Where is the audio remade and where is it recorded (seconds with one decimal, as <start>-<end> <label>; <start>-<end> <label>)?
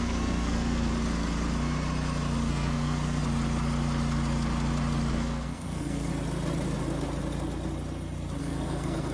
0.0-0.9 remade; 0.9-2.5 recorded; 2.5-3.2 remade; 3.2-5.1 recorded; 5.1-6.1 remade; 6.1-8.4 recorded; 8.4-9.1 remade